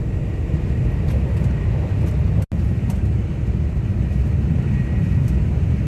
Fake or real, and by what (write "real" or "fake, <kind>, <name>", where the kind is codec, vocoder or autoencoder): real